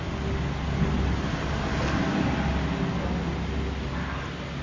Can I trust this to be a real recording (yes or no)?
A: yes